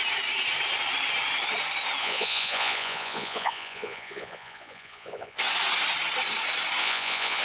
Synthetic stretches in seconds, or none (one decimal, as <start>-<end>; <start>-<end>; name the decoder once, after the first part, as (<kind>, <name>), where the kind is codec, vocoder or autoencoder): 2.0-5.4 (vocoder, Vocos); 6.8-7.4